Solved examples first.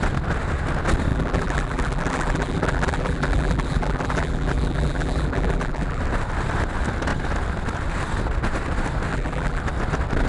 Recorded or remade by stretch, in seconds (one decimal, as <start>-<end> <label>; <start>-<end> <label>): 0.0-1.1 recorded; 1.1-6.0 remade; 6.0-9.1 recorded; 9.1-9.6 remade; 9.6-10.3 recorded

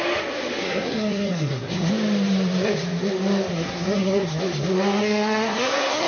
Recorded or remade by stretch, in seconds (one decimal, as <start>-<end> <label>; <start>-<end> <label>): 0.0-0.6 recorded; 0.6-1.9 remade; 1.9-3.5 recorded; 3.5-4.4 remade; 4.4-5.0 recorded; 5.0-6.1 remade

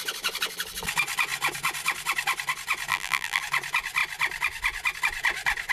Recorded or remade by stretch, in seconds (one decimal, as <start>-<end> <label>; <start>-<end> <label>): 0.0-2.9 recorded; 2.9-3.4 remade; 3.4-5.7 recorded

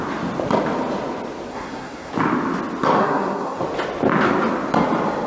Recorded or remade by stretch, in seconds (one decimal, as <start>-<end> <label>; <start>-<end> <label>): 0.0-1.5 recorded; 1.5-2.1 remade; 2.1-3.0 recorded; 3.0-3.6 remade; 3.6-5.3 recorded